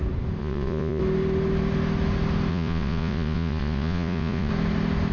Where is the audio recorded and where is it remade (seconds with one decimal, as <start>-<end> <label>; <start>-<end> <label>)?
0.0-0.4 recorded; 0.4-1.0 remade; 1.0-2.5 recorded; 2.5-4.5 remade; 4.5-5.1 recorded